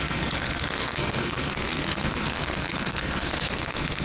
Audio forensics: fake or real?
fake